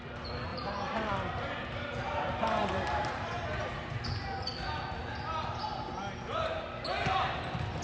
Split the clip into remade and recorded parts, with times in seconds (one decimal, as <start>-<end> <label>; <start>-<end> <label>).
0.0-0.5 recorded; 0.5-1.1 remade; 1.1-2.6 recorded; 2.6-3.4 remade; 3.4-7.8 recorded